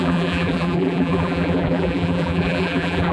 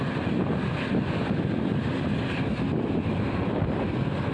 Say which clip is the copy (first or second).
first